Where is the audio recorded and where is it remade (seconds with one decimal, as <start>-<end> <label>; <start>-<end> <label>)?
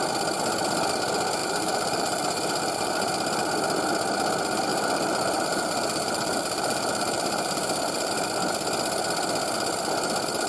0.0-1.4 recorded; 1.4-2.9 remade; 2.9-4.7 recorded; 4.7-8.1 remade; 8.1-10.5 recorded